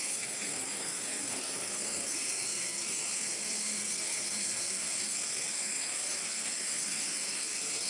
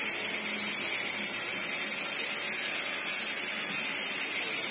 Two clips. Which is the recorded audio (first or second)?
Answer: second